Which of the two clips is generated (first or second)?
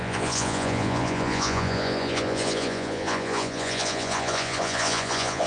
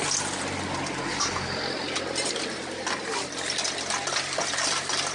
first